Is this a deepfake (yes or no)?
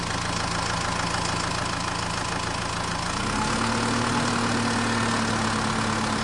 no